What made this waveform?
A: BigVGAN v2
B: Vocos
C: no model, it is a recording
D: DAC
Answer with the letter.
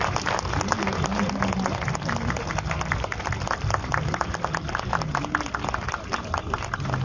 C